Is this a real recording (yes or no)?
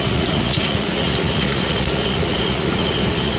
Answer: no